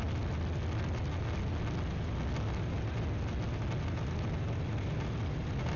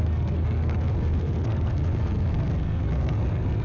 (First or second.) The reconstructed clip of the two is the second